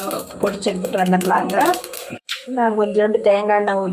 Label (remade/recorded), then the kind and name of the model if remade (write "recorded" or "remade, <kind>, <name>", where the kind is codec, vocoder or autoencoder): remade, codec, SNAC